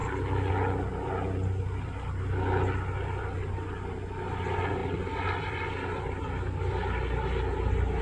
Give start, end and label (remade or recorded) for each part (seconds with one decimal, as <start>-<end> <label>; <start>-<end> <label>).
0.0-0.5 remade; 0.5-4.8 recorded; 4.8-7.0 remade; 7.0-8.0 recorded